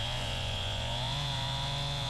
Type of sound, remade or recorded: remade